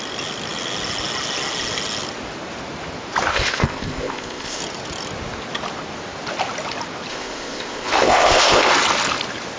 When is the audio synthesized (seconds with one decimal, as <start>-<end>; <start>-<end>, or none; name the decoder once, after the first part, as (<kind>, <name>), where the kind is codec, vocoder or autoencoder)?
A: 3.3-4.6 (codec, ZipCodec); 7.1-8.7